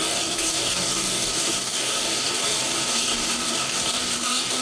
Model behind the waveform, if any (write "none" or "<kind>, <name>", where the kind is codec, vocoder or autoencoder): codec, DAC